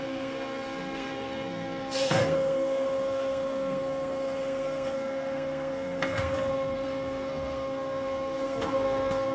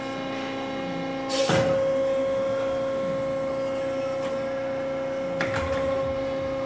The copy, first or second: first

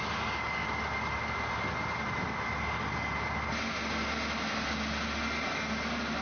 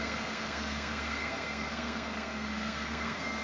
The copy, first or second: second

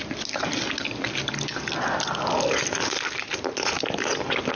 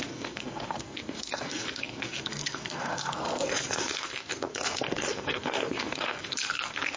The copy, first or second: second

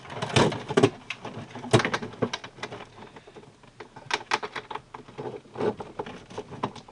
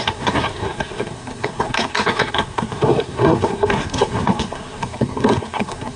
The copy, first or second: second